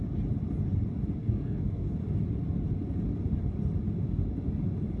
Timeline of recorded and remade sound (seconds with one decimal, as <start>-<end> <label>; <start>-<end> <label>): 0.0-1.2 recorded; 1.2-1.9 remade; 1.9-5.0 recorded